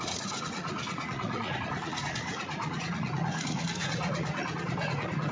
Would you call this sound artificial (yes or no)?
yes